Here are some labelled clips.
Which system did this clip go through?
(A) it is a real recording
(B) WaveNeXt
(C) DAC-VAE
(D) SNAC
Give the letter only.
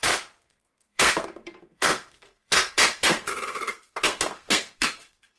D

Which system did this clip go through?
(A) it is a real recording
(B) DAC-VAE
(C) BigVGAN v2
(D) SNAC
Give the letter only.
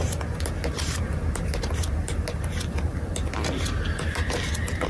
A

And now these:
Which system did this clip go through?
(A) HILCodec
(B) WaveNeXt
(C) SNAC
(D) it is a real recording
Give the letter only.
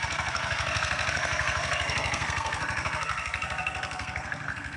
C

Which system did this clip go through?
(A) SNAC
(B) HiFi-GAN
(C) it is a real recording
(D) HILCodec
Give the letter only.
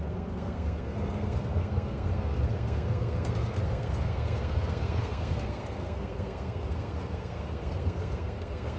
A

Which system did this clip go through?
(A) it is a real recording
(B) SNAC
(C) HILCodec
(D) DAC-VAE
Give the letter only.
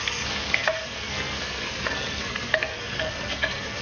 B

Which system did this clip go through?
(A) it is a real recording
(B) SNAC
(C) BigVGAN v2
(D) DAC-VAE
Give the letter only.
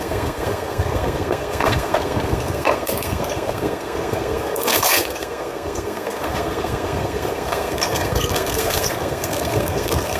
B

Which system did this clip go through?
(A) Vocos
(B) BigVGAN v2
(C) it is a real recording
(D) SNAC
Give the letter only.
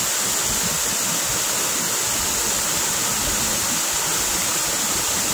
C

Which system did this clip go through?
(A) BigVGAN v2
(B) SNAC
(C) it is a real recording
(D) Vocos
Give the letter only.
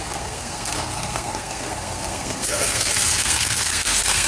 B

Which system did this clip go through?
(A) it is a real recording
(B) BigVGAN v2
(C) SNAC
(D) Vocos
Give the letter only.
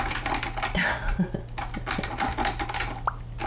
A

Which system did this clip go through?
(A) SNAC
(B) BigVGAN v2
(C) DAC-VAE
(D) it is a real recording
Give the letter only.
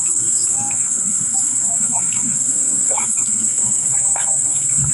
A